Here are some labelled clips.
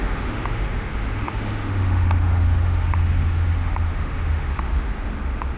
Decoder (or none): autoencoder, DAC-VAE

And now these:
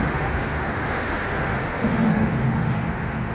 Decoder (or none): autoencoder, DAC-VAE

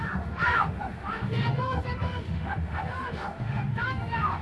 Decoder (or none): autoencoder, DAC-VAE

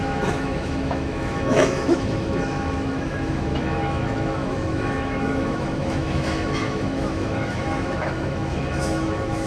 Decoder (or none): autoencoder, DAC-VAE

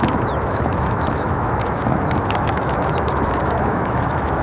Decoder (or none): autoencoder, DAC-VAE